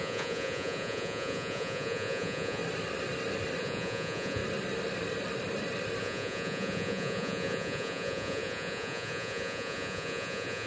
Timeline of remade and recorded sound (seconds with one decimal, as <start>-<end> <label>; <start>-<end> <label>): 0.0-2.6 remade; 2.6-3.6 recorded; 3.6-4.4 remade; 4.4-6.0 recorded; 6.0-10.7 remade